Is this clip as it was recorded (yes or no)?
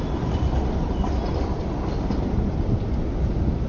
yes